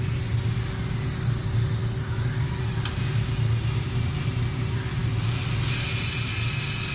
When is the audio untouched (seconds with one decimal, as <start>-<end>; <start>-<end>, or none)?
0.0-6.9